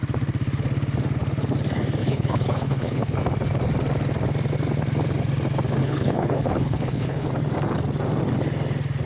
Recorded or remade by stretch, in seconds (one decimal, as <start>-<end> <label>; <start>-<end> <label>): 0.0-2.0 recorded; 2.0-3.2 remade; 3.2-5.8 recorded; 5.8-7.3 remade; 7.3-9.1 recorded